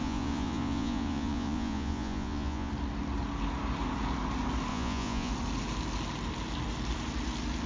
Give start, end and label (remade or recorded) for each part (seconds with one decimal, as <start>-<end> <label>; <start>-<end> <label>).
0.0-2.7 remade; 2.7-4.7 recorded; 4.7-5.3 remade; 5.3-7.7 recorded